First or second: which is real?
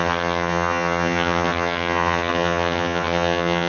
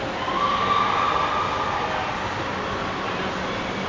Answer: second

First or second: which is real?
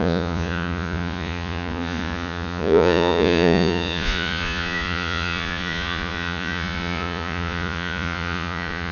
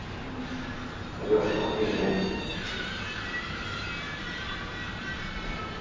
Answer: second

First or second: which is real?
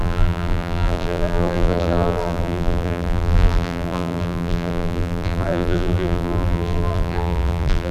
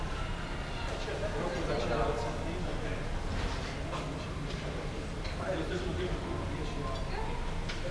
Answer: second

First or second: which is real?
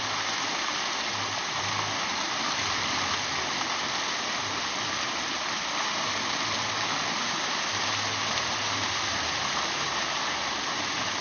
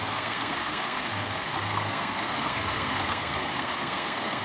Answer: first